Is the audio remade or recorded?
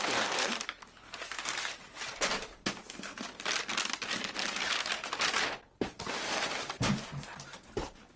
recorded